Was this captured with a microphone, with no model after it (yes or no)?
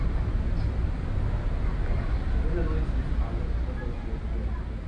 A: yes